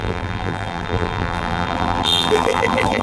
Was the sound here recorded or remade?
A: remade